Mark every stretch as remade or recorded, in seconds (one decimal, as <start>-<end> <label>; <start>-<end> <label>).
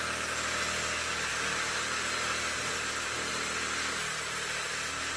0.0-1.3 recorded; 1.3-3.3 remade; 3.3-5.2 recorded